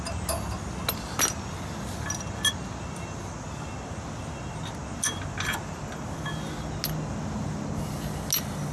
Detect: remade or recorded recorded